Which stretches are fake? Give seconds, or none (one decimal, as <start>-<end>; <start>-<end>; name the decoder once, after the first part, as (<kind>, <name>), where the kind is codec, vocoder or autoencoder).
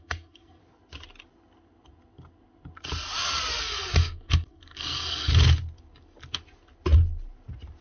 0.0-0.6 (codec, SNAC); 3.6-5.3